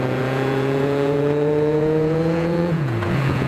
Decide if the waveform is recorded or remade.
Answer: remade